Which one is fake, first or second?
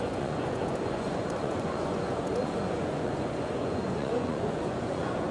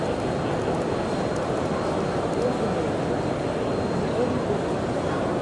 first